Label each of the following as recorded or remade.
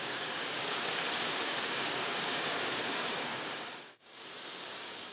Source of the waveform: remade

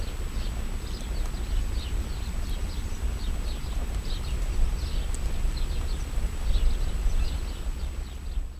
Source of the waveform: recorded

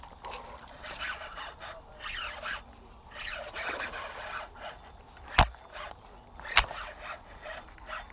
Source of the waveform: recorded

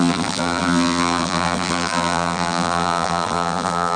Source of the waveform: remade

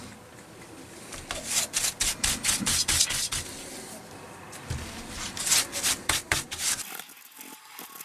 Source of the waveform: recorded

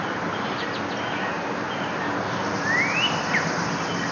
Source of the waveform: recorded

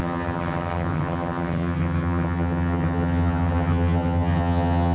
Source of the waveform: remade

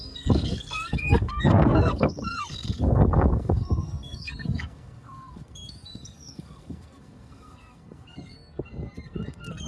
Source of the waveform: remade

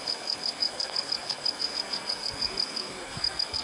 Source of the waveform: remade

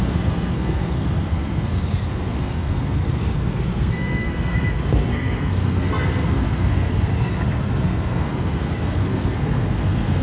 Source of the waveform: remade